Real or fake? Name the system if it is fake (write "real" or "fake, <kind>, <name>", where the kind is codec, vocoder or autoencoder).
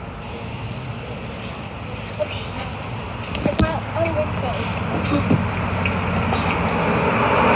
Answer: real